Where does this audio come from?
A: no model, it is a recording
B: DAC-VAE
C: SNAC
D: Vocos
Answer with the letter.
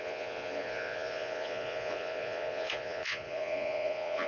D